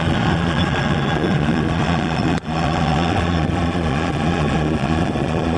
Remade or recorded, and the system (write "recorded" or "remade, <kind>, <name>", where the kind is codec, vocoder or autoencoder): remade, vocoder, Vocos